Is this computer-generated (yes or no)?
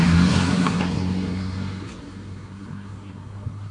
yes